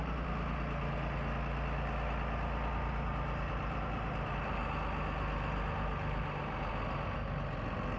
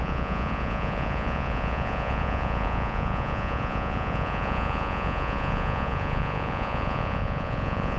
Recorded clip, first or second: first